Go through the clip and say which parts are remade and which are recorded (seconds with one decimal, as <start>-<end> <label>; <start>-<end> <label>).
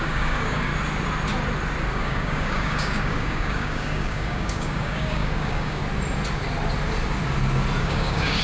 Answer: 0.0-0.7 remade; 0.7-1.9 recorded; 1.9-5.8 remade; 5.8-7.8 recorded; 7.8-8.4 remade